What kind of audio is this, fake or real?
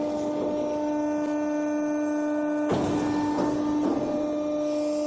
real